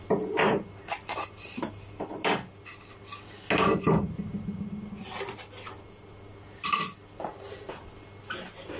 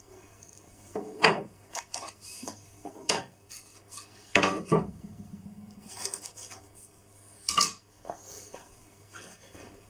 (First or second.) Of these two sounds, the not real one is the second